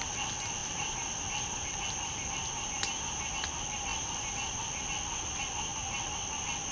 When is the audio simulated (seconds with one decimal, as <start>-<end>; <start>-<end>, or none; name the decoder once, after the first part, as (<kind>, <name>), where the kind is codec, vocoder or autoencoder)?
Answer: 0.6-3.3 (vocoder, BigVGAN v2)

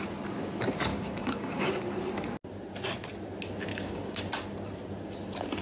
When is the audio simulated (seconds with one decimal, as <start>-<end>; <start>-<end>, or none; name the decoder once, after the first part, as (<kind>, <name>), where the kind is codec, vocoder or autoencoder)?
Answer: 0.9-1.7 (codec, DAC); 3.7-4.2

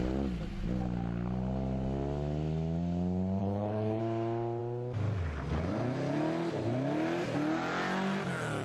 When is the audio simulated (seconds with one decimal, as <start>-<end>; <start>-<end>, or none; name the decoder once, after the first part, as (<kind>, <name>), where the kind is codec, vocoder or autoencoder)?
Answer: 3.4-4.0 (codec, HILCodec)

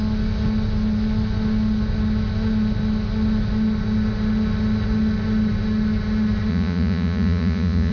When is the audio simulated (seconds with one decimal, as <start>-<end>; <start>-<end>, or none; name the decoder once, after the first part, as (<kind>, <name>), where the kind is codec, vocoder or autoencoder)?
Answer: 6.5-7.9 (vocoder, Vocos)

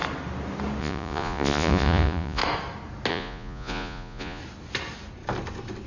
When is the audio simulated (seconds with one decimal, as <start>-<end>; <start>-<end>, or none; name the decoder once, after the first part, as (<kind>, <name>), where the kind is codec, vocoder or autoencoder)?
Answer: 0.8-2.4 (vocoder, Vocos); 3.1-4.4

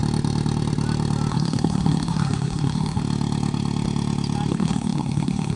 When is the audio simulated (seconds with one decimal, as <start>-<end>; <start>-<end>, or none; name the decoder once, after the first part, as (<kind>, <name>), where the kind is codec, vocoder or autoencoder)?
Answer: 1.3-3.0 (codec, SNAC); 4.5-5.6